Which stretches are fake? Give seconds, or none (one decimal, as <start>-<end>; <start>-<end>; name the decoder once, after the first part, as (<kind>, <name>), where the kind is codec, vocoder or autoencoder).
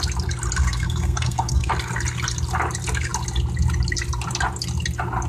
0.6-1.7 (codec, SNAC)